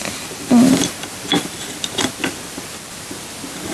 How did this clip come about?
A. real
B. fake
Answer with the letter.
A